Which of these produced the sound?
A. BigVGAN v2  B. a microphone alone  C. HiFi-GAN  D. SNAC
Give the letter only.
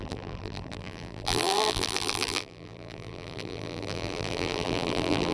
A